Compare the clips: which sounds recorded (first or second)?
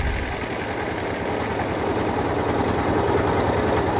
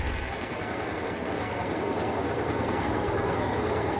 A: first